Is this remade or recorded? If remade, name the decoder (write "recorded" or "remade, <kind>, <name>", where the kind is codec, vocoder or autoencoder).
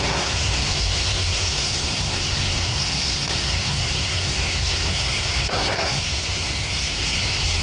remade, codec, SNAC